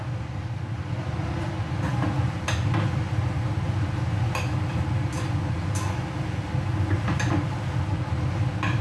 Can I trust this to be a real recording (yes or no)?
yes